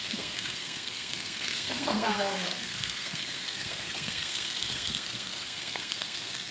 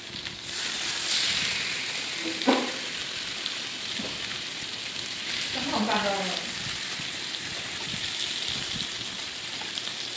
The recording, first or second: second